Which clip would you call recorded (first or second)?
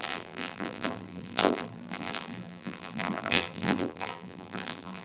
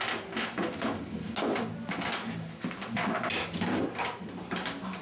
second